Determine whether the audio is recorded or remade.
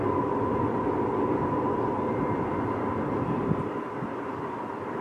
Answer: recorded